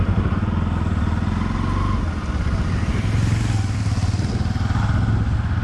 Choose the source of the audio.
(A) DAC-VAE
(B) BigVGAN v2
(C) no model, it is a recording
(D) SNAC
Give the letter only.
C